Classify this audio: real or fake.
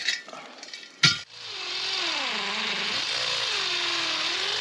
real